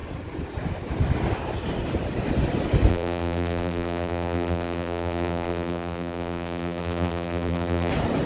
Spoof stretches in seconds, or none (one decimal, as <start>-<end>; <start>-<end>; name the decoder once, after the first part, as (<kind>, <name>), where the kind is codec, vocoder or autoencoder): 2.9-7.9 (vocoder, BigVGAN v2)